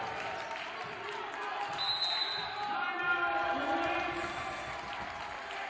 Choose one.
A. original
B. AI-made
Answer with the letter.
A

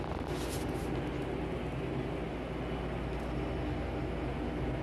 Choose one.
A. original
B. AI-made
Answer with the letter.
A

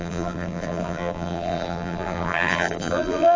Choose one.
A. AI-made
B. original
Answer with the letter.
A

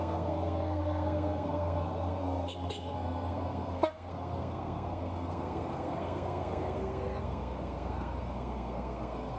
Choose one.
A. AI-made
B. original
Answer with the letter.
A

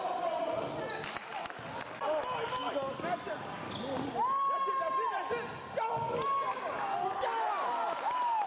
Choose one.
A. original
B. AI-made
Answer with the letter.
A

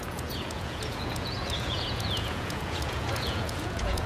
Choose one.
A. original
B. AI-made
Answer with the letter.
B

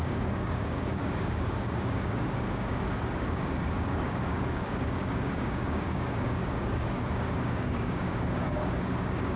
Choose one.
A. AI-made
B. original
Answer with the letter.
A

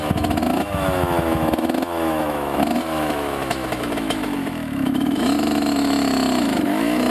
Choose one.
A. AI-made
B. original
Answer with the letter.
A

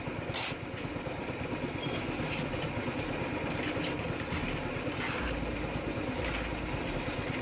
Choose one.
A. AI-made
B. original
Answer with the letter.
B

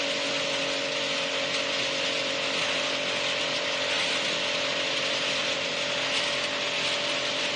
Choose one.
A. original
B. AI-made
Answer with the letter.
A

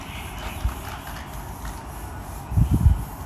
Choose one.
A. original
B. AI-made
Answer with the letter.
A